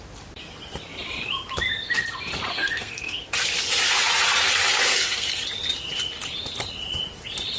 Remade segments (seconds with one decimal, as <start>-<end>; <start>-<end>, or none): 2.5-3.3; 4.7-5.4